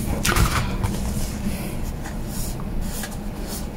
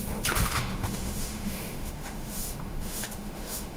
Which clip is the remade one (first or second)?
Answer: second